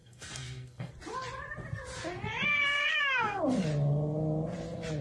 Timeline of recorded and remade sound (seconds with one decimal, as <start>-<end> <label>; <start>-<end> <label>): 0.0-0.9 remade; 0.9-2.5 recorded; 2.5-3.4 remade; 3.4-5.0 recorded